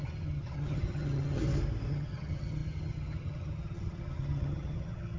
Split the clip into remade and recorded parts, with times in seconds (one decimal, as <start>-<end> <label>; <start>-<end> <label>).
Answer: 0.0-1.4 remade; 1.4-1.9 recorded; 1.9-5.2 remade